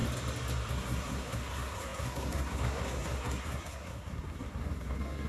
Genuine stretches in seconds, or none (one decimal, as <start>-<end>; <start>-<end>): 0.0-0.7